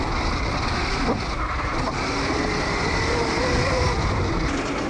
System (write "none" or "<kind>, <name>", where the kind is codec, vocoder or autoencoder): none